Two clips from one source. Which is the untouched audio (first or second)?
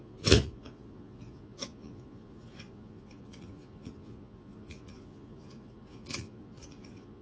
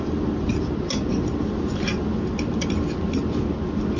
second